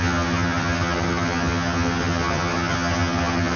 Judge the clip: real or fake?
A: fake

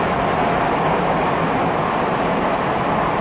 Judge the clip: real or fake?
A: real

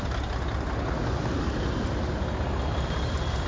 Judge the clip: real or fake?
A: real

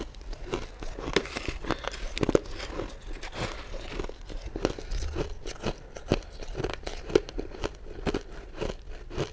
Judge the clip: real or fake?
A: real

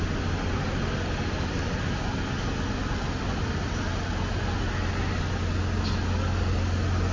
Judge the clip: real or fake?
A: real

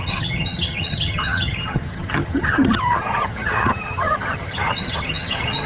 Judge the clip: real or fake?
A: fake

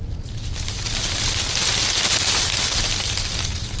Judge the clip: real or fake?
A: real